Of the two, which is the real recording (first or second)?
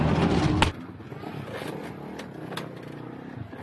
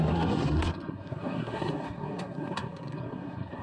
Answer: first